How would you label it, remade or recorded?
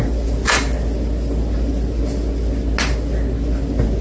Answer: recorded